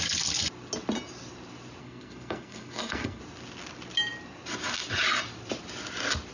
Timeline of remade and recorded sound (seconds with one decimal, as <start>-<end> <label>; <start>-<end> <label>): 0.0-1.8 recorded; 1.8-3.2 remade; 3.2-6.3 recorded